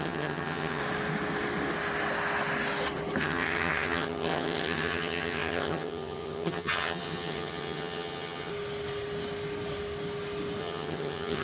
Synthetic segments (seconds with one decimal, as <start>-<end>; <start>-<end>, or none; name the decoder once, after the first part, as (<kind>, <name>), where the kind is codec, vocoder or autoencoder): 0.0-0.8 (vocoder, HiFi-GAN); 3.2-8.5; 10.6-11.4